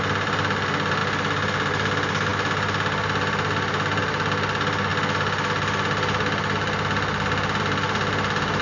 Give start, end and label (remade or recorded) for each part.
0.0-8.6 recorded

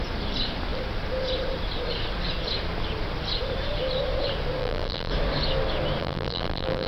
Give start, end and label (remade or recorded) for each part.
0.0-4.6 recorded; 4.6-5.1 remade; 5.1-6.0 recorded; 6.0-6.9 remade